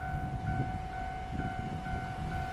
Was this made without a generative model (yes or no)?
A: yes